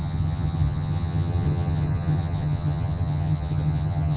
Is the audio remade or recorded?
remade